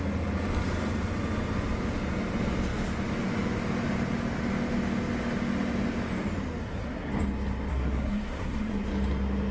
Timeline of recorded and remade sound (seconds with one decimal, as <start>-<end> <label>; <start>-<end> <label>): 0.0-6.6 recorded; 6.6-7.1 remade; 7.1-7.7 recorded; 7.7-8.7 remade; 8.7-9.5 recorded